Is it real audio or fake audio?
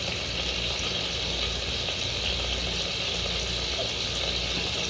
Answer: real